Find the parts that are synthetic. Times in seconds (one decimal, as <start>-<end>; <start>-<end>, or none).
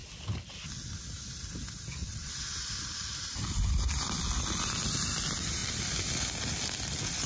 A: 2.0-2.7